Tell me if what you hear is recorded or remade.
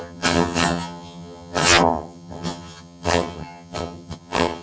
remade